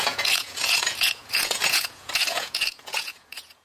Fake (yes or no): yes